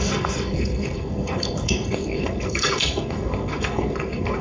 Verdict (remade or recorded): remade